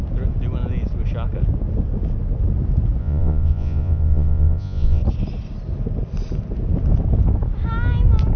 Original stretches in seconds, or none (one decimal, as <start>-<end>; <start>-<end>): 0.0-3.0; 5.0-8.4